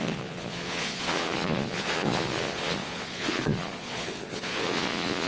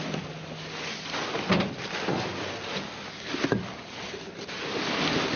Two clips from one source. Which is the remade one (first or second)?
first